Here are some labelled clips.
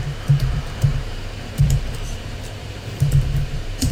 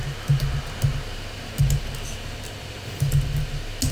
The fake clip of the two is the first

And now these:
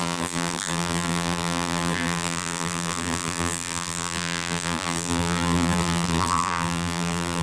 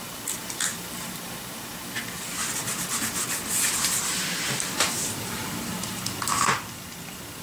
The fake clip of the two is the first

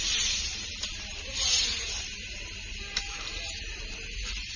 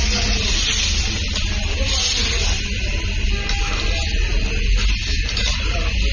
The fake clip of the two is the first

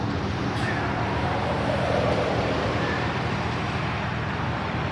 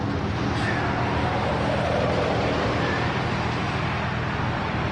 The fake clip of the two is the first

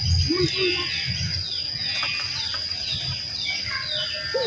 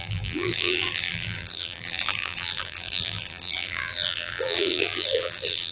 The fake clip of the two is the second